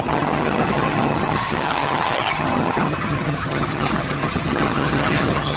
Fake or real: fake